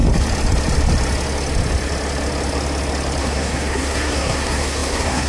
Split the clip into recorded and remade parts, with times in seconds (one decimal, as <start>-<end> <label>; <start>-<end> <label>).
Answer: 0.0-3.2 recorded; 3.2-5.3 remade